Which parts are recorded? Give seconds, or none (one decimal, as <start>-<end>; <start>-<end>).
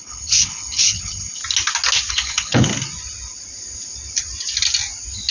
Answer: 1.4-2.1; 2.7-5.3